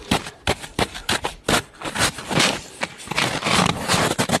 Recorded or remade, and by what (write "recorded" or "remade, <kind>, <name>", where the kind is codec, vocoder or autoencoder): recorded